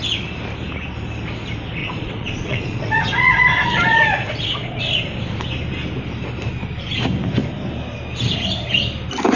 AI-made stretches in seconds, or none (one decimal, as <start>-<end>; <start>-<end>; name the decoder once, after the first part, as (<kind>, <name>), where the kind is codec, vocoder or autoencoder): 1.8-4.8 (vocoder, Vocos)